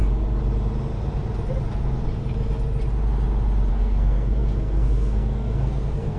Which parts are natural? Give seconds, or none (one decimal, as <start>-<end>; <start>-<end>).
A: 0.0-3.7